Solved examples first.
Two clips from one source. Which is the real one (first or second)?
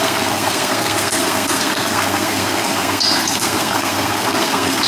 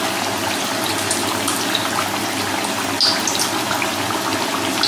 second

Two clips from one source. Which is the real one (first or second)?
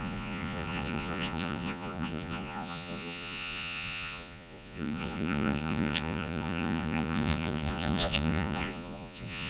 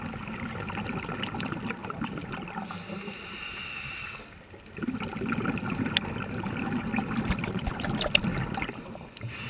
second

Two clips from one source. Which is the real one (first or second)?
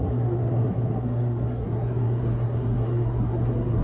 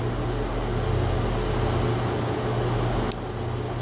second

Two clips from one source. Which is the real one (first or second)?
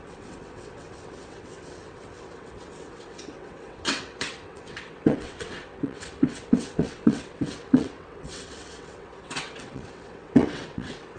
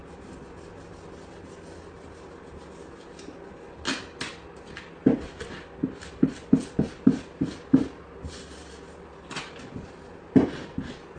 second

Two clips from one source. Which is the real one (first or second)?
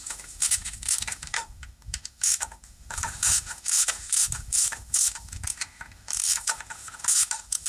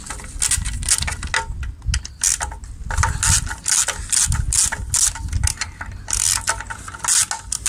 second